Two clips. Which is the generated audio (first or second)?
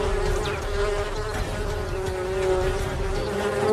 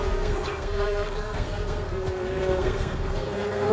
second